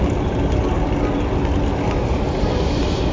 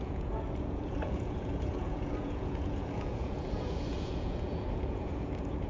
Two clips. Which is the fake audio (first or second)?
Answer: second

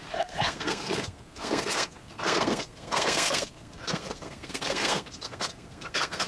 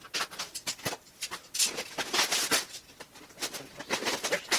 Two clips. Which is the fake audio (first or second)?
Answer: first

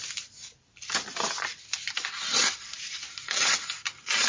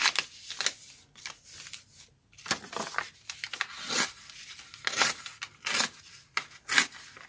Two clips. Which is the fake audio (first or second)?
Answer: first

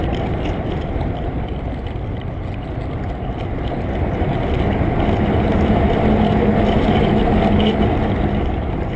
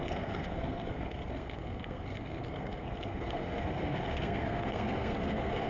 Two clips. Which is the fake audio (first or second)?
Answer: second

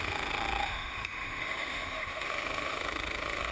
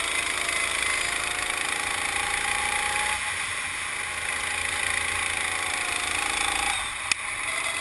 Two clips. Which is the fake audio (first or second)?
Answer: first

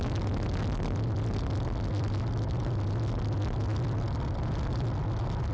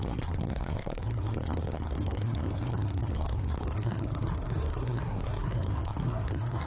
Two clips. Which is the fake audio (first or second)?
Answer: second